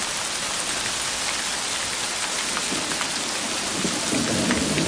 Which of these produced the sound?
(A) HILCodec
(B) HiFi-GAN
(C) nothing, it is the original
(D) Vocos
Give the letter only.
C